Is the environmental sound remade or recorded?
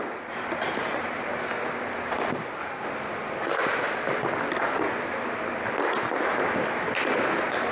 recorded